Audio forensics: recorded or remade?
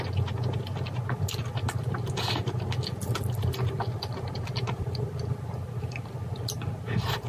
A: recorded